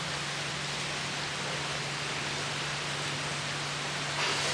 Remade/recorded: recorded